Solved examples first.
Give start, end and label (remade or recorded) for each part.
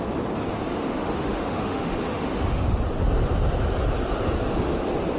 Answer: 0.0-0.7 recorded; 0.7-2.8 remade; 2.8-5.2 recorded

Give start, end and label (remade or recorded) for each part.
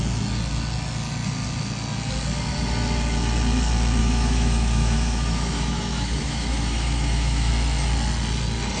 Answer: 0.0-4.0 recorded; 4.0-7.5 remade; 7.5-8.8 recorded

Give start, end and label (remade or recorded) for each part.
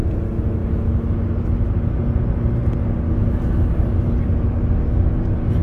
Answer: 0.0-5.6 recorded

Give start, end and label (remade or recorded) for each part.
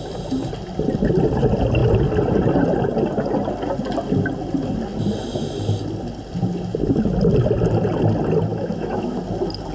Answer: 0.0-8.5 recorded; 8.5-9.2 remade; 9.2-9.7 recorded